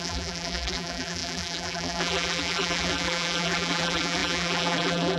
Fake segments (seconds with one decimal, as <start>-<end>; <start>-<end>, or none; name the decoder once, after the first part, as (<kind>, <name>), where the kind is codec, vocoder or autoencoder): 0.0-5.2 (vocoder, BigVGAN v2)